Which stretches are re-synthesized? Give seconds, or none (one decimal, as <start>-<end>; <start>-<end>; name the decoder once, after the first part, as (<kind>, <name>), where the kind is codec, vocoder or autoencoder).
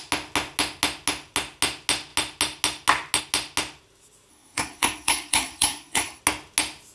4.3-6.2 (codec, SNAC)